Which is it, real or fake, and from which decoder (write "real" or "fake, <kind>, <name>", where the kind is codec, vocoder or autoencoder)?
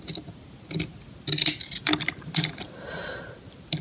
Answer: real